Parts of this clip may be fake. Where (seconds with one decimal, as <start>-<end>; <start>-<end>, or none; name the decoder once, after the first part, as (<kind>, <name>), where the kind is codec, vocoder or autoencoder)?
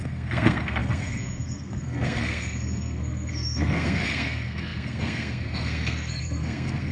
0.0-6.9 (codec, SNAC)